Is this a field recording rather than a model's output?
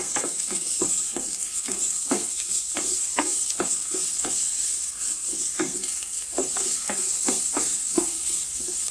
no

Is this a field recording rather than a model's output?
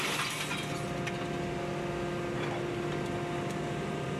yes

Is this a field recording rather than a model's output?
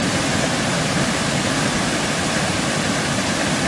yes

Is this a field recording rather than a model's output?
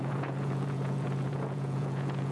no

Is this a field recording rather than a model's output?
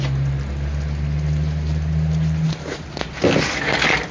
yes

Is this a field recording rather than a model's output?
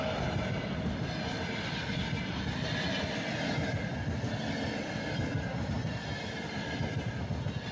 yes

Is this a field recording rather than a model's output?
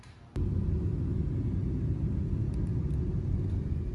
yes